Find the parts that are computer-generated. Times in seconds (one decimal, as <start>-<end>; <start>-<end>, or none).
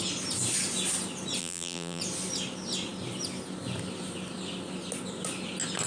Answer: 1.4-2.0